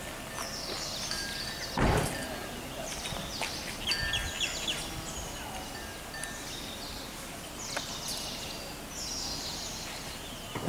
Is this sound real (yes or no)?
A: yes